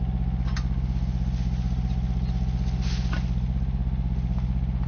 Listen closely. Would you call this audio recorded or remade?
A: recorded